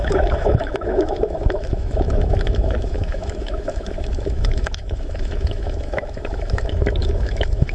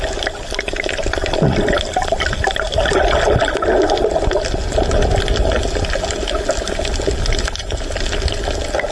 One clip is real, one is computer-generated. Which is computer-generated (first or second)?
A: first